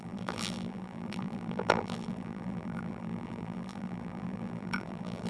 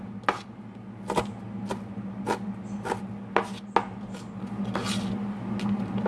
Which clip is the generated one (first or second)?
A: first